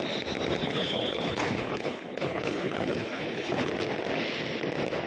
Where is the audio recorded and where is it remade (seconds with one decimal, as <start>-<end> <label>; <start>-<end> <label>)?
0.0-0.6 recorded; 0.6-3.7 remade; 3.7-5.1 recorded